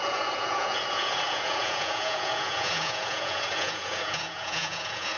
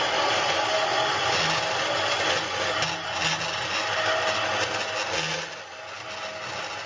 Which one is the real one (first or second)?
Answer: second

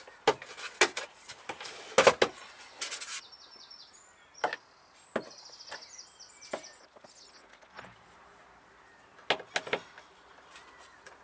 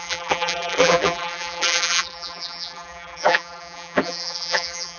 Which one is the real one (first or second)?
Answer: first